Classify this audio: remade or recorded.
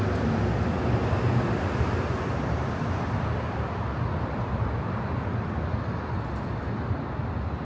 recorded